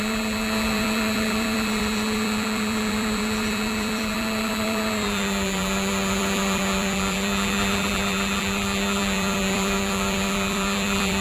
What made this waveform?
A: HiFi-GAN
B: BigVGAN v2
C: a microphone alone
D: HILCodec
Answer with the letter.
B